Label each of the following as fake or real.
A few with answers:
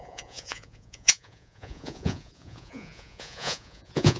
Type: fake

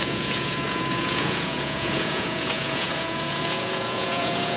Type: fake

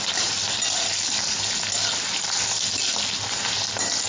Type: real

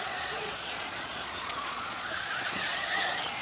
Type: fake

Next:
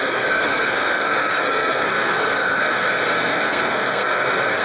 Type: fake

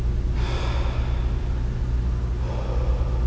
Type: real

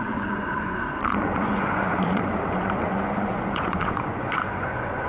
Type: fake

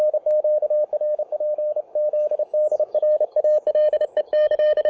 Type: fake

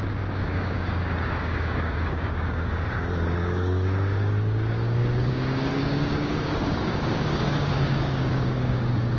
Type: fake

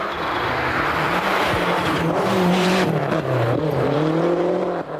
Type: fake